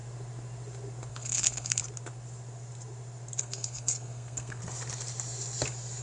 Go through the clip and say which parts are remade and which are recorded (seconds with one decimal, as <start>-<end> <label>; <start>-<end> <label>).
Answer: 0.0-1.1 recorded; 1.1-1.8 remade; 1.8-3.4 recorded; 3.4-4.6 remade; 4.6-6.0 recorded